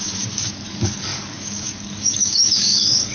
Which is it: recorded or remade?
remade